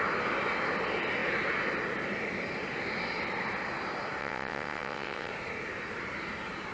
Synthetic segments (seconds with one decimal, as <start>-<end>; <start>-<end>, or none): 4.2-5.3